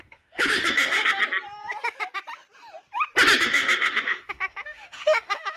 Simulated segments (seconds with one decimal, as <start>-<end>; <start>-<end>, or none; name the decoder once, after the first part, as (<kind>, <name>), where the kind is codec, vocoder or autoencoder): 0.0-1.2 (autoencoder, DAC-VAE); 3.4-5.6